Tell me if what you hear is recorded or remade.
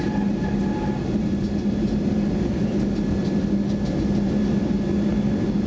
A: recorded